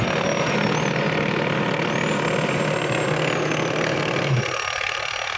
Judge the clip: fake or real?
real